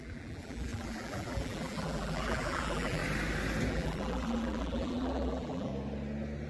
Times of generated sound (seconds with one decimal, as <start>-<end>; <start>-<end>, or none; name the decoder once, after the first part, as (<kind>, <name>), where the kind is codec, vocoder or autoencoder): 0.0-3.0 (vocoder, BigVGAN v2); 3.7-5.7